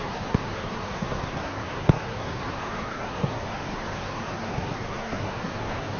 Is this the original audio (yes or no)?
no